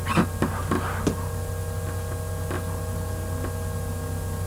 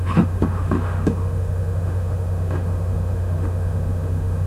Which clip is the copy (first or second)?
second